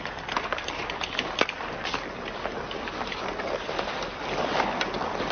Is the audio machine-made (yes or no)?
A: no